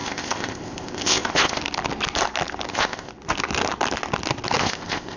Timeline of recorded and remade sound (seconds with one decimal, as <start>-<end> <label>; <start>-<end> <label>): 0.0-1.6 remade; 1.6-2.7 recorded; 2.7-3.1 remade; 3.1-4.6 recorded; 4.6-5.2 remade